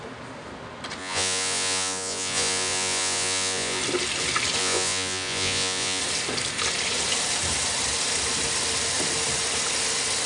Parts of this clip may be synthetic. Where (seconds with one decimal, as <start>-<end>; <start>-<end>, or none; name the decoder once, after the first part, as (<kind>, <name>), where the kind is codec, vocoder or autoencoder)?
1.0-3.8 (vocoder, Vocos); 4.6-6.0